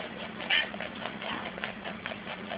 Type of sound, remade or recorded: remade